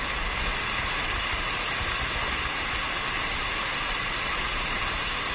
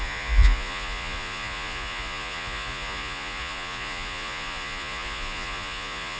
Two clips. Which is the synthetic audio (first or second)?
second